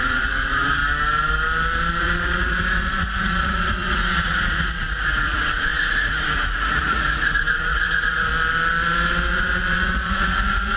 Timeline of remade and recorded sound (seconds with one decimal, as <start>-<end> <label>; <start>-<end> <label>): 0.0-0.8 remade; 0.8-2.0 recorded; 2.0-8.3 remade; 8.3-9.3 recorded; 9.3-10.8 remade